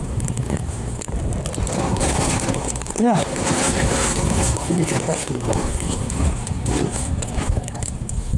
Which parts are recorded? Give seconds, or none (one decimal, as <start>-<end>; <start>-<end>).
1.1-1.8